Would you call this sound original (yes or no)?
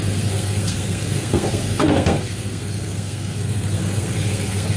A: no